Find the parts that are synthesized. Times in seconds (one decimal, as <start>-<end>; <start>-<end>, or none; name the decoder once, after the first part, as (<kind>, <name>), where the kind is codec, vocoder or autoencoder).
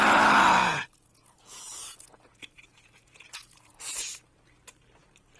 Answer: 0.6-3.8 (vocoder, Vocos)